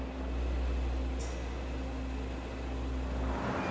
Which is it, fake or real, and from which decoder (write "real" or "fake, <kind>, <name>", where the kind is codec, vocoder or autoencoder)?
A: real